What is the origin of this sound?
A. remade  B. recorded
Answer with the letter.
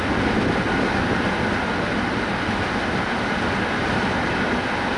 B